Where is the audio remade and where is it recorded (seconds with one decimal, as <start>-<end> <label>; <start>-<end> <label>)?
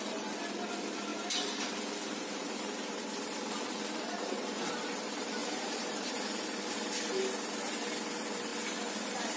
0.0-1.1 recorded; 1.1-4.7 remade; 4.7-5.4 recorded; 5.4-6.6 remade; 6.6-9.4 recorded